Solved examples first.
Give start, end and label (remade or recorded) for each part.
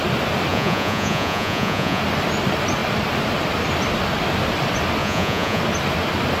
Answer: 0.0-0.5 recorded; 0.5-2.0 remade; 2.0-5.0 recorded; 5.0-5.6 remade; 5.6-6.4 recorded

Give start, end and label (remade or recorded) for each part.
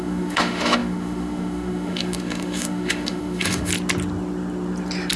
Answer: 0.0-3.7 remade; 3.7-5.2 recorded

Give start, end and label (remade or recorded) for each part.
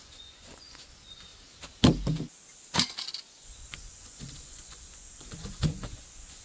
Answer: 0.0-1.3 remade; 1.3-3.3 recorded; 3.3-6.4 remade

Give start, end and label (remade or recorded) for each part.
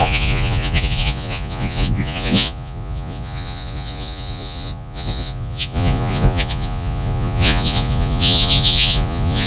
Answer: 0.0-9.5 remade